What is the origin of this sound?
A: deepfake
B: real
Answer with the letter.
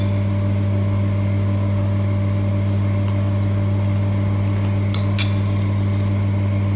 B